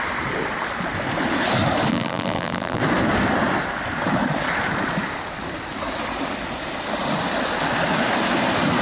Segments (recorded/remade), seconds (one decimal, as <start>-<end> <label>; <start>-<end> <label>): 0.0-1.9 recorded; 1.9-2.8 remade; 2.8-8.8 recorded